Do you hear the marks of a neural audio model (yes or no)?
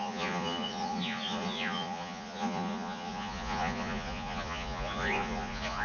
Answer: yes